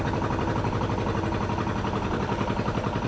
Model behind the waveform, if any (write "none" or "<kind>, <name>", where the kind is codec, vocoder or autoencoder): none